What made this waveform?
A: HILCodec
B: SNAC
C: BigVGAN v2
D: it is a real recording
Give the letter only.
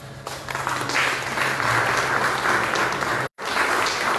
D